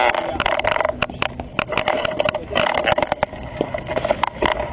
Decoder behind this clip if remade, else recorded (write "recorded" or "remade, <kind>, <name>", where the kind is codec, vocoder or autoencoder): recorded